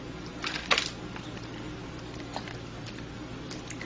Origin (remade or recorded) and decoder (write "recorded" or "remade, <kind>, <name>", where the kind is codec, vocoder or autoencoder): recorded